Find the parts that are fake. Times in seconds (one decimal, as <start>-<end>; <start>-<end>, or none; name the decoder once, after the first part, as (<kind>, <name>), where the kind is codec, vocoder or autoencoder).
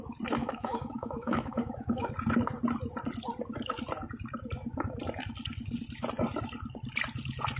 0.4-2.1 (autoencoder, DAC-VAE)